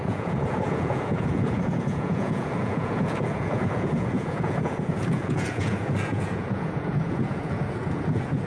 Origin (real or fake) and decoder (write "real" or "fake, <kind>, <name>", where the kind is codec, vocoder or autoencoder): fake, vocoder, Vocos